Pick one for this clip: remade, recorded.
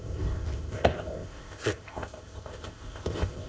remade